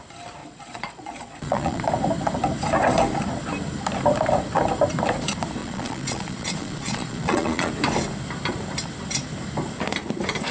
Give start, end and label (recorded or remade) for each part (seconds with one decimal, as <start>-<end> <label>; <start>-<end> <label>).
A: 0.0-0.4 recorded; 0.4-1.8 remade; 1.8-5.6 recorded; 5.6-7.7 remade; 7.7-10.5 recorded